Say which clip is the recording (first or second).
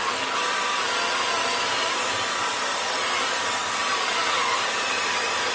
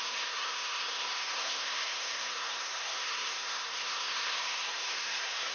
first